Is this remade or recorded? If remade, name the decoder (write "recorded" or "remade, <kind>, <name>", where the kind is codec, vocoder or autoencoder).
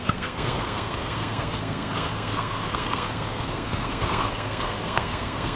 remade, codec, SNAC